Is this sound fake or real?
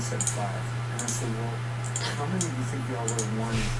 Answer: real